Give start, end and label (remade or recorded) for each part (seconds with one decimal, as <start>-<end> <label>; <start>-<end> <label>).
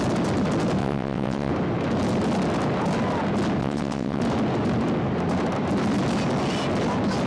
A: 0.0-0.8 recorded; 0.8-1.5 remade; 1.5-3.6 recorded; 3.6-4.2 remade; 4.2-7.3 recorded